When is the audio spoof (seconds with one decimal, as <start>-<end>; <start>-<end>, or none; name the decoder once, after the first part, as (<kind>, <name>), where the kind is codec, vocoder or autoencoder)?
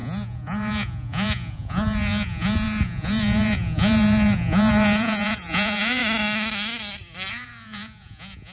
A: 0.0-6.0 (vocoder, Vocos); 7.3-8.5